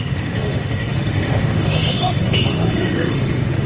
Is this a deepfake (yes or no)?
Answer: yes